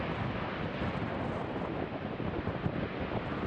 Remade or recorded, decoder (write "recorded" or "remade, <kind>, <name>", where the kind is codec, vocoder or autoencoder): recorded